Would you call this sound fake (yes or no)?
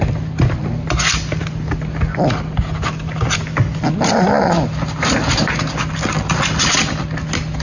no